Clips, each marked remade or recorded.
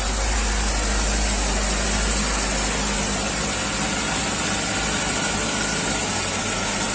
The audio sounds recorded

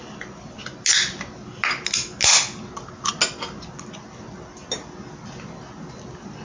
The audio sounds recorded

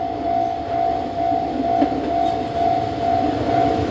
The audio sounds recorded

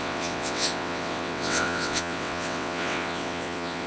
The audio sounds remade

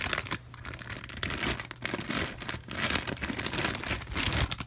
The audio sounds recorded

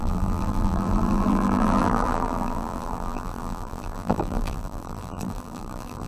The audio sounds remade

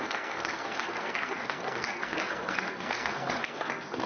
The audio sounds remade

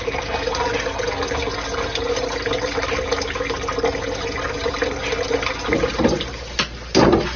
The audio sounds recorded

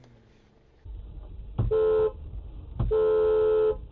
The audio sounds recorded